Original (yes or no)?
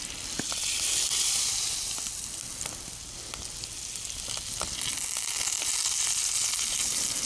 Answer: yes